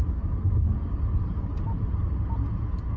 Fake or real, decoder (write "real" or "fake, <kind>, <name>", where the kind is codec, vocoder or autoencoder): real